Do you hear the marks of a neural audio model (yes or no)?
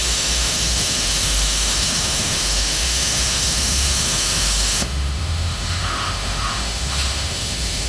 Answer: yes